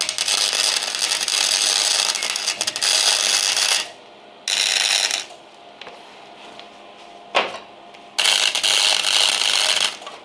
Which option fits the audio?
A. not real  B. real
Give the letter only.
B